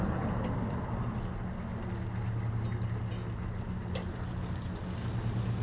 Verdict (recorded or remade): recorded